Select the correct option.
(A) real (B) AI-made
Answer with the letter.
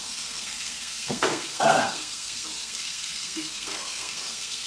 B